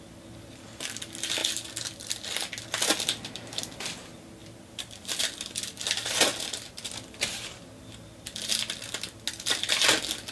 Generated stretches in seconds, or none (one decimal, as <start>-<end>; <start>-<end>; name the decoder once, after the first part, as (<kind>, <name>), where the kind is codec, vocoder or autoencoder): 1.4-2.1 (vocoder, BigVGAN v2); 4.4-5.5; 6.3-6.9